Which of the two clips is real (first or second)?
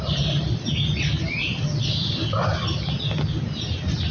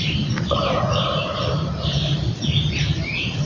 first